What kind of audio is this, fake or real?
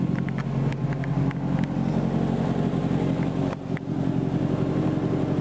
real